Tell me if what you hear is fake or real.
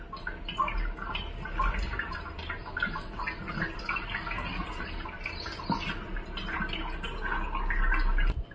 real